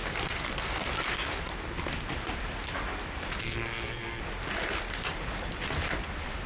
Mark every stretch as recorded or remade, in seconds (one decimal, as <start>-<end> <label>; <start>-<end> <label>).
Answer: 0.0-3.4 recorded; 3.4-4.2 remade; 4.2-6.5 recorded